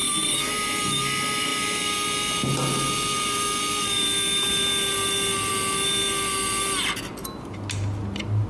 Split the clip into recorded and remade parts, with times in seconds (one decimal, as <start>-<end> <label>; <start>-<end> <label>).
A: 0.0-0.5 remade; 0.5-8.5 recorded